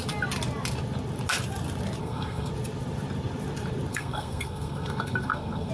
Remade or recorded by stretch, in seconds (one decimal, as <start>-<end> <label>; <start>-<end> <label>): 0.0-2.0 recorded; 2.0-2.5 remade; 2.5-3.9 recorded; 3.9-5.7 remade

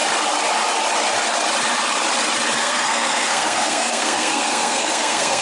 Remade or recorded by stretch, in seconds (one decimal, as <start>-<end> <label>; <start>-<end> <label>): 0.0-2.6 recorded; 2.6-5.4 remade

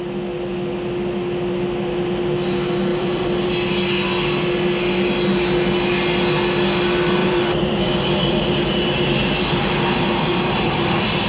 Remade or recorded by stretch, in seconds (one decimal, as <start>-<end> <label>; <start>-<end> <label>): 0.0-2.9 recorded; 2.9-3.5 remade; 3.5-7.2 recorded; 7.2-11.3 remade

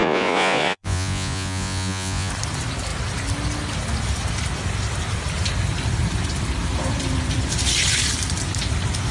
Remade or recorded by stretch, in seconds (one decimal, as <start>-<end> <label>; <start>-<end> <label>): 0.0-2.3 remade; 2.3-9.1 recorded

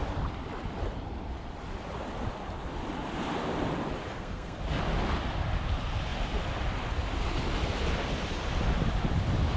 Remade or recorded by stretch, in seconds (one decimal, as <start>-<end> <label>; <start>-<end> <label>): 0.0-4.1 recorded; 4.1-4.6 remade; 4.6-9.6 recorded